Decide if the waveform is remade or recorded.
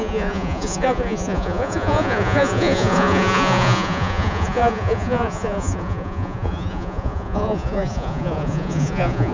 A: remade